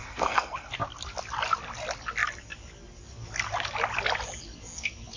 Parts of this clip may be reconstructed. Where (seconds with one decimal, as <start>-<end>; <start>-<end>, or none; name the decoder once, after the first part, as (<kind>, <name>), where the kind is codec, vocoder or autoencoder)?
0.0-0.7 (codec, SNAC)